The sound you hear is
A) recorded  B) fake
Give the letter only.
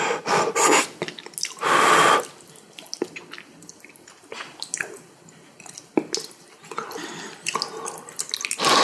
A